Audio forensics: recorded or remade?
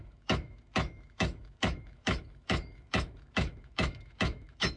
remade